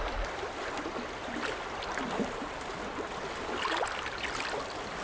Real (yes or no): yes